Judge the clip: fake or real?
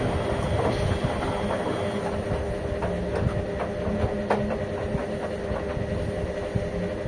real